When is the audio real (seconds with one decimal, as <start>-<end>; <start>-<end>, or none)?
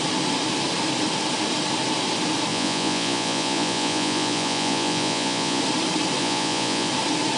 0.0-2.5; 5.6-6.2; 6.9-7.4